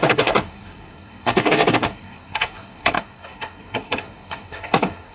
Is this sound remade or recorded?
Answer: remade